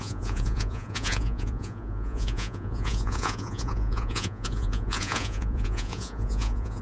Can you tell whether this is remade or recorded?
remade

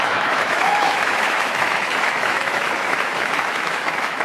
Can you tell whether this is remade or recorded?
remade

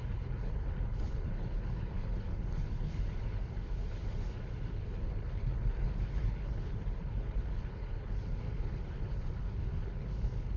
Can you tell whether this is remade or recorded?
remade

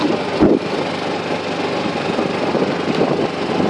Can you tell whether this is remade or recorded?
recorded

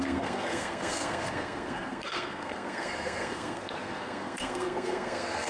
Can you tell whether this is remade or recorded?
remade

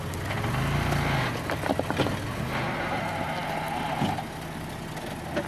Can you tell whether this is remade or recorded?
recorded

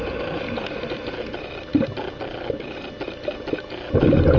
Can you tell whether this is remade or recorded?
recorded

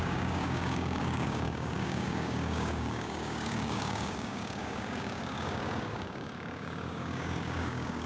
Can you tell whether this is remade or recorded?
remade